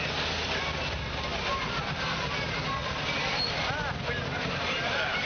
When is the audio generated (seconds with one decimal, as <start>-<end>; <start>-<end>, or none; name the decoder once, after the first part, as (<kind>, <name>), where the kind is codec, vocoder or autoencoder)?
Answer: none